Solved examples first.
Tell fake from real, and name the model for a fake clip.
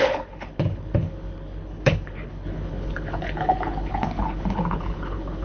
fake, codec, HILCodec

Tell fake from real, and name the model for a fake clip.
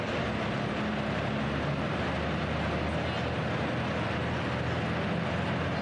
real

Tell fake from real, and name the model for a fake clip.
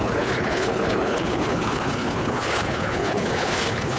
fake, codec, HILCodec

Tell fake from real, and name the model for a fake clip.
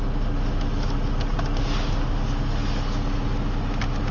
real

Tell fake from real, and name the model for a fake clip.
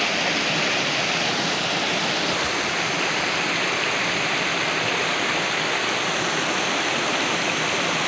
real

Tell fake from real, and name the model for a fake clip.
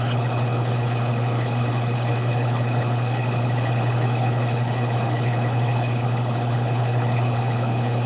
fake, codec, HILCodec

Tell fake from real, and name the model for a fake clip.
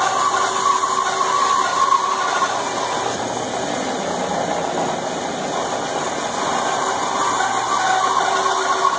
real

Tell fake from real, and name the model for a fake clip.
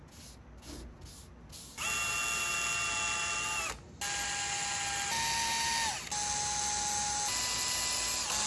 real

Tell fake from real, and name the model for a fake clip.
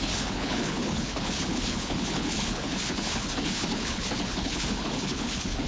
fake, codec, HILCodec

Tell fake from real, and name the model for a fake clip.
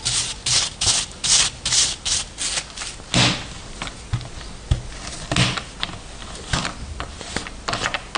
real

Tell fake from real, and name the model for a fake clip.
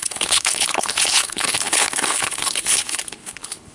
fake, codec, HILCodec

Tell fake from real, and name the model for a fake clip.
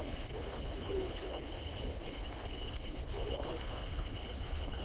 fake, codec, HILCodec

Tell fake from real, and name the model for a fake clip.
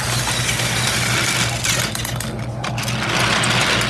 real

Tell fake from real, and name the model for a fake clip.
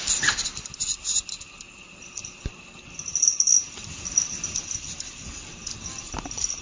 real